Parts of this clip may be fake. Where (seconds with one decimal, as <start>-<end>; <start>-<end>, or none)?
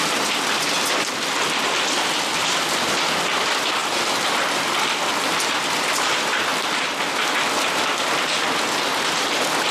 none